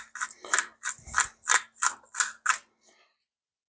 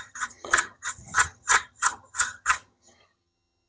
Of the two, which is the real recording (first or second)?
first